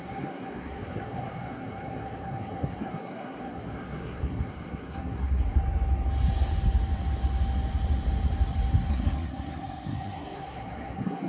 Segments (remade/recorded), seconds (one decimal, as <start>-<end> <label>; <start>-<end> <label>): 0.0-5.6 remade; 5.6-8.9 recorded; 8.9-11.3 remade